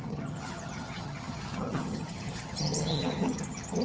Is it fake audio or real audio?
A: fake